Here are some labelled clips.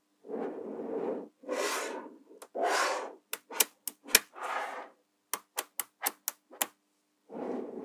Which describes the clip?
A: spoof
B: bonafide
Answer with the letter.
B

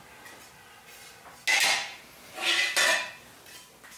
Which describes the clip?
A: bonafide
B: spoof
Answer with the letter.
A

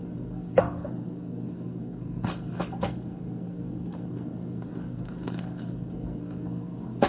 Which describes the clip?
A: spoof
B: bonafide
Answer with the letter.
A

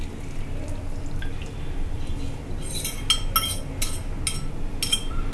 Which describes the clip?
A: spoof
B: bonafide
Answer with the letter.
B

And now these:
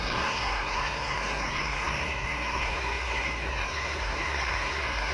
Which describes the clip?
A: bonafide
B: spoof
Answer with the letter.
B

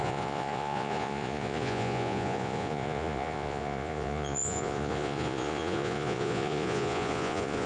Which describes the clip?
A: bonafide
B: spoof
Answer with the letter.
B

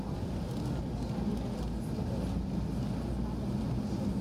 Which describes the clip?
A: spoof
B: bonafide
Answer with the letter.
B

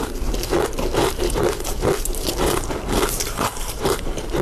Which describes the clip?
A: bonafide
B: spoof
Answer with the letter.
B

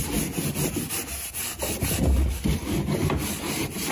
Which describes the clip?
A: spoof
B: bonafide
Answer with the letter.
B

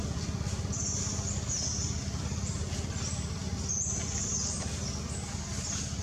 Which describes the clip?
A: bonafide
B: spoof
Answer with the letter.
A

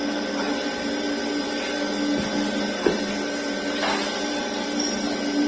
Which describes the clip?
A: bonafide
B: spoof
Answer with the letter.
A